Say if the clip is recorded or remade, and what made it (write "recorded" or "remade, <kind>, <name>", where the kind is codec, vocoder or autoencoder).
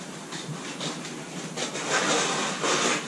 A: recorded